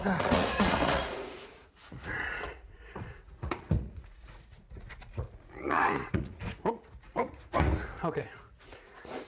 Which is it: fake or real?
fake